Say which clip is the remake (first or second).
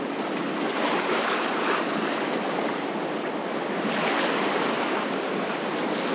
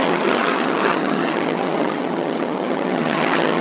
second